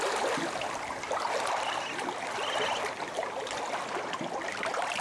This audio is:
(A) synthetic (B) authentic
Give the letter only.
B